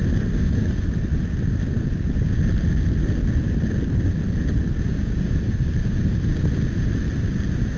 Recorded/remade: recorded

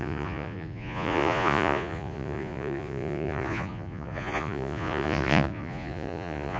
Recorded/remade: remade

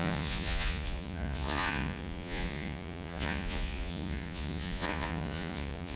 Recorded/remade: remade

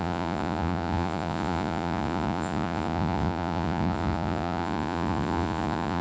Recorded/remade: remade